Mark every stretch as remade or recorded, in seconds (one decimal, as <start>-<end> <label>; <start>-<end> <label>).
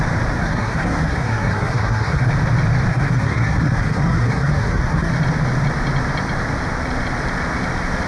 0.0-0.4 recorded; 0.4-2.3 remade; 2.3-2.9 recorded; 2.9-5.1 remade; 5.1-8.1 recorded